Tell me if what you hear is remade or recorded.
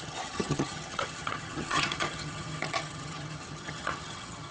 remade